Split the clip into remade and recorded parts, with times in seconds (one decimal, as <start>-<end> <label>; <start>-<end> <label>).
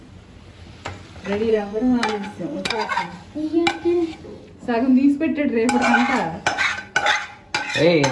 0.0-1.5 recorded; 1.5-2.9 remade; 2.9-8.1 recorded